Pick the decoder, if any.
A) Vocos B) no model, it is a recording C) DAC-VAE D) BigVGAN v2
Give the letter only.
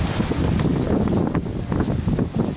B